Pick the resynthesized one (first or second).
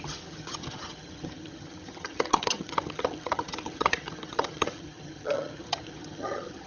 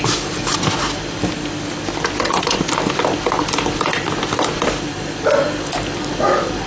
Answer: first